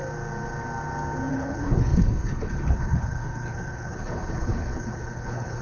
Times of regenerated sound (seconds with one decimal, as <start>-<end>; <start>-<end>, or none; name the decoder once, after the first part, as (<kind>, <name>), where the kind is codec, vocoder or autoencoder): 1.3-5.6 (codec, HILCodec)